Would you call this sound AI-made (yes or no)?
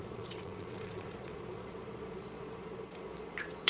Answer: yes